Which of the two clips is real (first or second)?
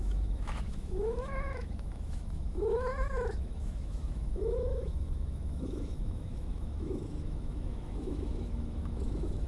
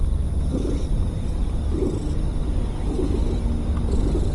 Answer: second